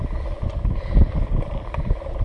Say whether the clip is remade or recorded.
recorded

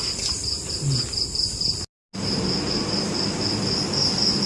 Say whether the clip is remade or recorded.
recorded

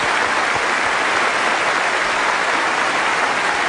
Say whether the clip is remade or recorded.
recorded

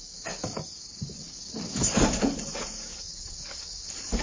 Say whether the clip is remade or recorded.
remade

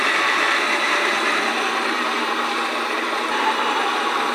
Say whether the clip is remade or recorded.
remade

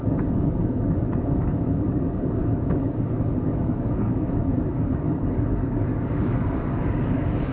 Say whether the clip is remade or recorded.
remade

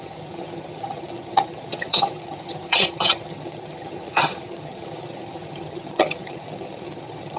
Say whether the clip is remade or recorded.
remade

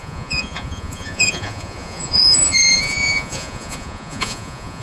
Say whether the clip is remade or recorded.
remade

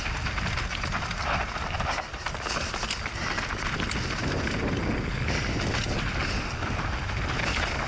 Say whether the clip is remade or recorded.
recorded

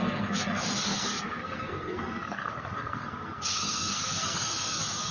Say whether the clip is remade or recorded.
remade